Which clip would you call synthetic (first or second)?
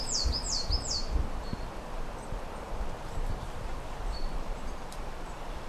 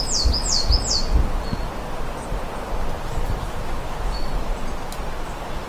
first